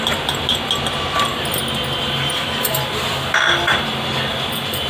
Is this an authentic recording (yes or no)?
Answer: yes